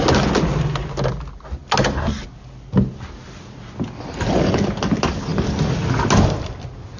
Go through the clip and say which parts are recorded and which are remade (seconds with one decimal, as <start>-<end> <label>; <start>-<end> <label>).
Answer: 0.0-7.0 recorded